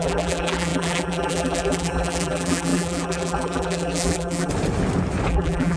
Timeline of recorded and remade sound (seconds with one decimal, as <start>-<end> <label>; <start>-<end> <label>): 0.0-4.5 remade; 4.5-5.3 recorded; 5.3-5.8 remade